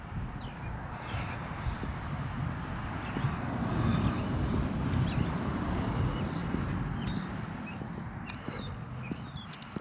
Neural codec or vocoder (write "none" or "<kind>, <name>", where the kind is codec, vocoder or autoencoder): none